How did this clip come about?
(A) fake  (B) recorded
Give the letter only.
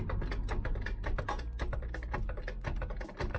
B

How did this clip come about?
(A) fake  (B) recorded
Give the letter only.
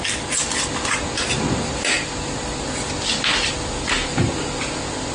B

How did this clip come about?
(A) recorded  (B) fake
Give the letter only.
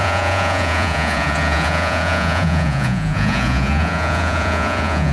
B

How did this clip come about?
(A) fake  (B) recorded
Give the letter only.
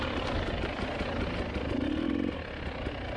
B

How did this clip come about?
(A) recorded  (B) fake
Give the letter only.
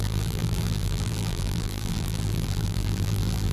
B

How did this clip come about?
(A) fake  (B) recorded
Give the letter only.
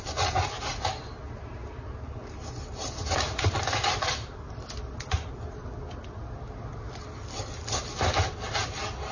B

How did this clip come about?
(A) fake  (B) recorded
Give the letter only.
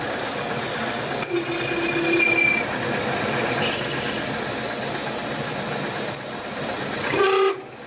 B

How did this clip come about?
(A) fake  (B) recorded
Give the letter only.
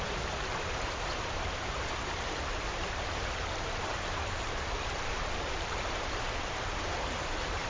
A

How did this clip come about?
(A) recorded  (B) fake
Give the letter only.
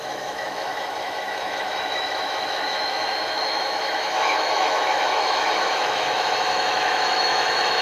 B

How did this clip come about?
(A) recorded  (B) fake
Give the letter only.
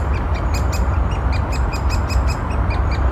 A